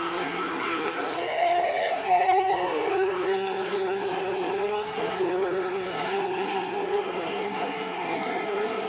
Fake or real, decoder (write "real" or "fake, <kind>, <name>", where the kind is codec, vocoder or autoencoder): fake, codec, SNAC